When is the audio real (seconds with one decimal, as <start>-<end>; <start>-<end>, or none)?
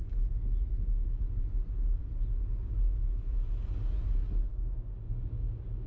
0.0-4.5